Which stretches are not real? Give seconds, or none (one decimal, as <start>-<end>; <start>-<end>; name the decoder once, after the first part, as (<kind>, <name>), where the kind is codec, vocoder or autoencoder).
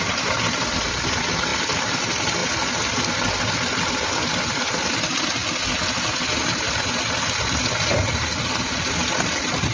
1.5-2.0 (vocoder, BigVGAN v2)